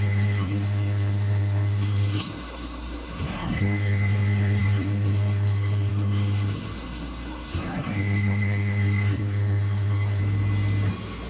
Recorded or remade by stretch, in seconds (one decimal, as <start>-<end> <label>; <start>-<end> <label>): 0.0-10.2 remade; 10.2-11.3 recorded